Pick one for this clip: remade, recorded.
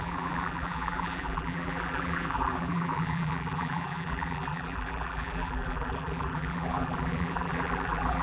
remade